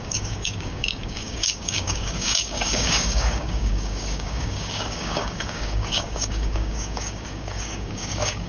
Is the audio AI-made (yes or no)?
yes